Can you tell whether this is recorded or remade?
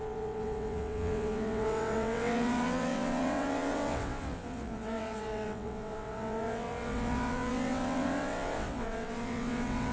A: remade